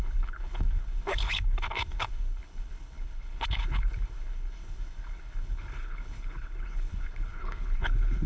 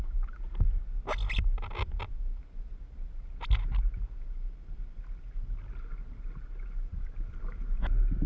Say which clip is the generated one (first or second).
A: first